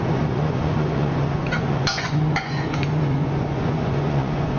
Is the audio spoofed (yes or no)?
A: yes